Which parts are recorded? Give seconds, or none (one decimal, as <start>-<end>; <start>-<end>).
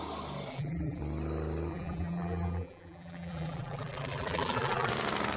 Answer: 0.0-0.5; 1.0-1.7; 4.9-5.4